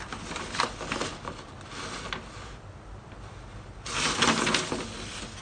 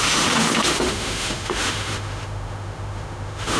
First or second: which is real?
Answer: first